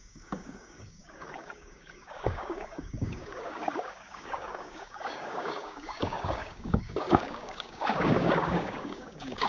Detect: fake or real fake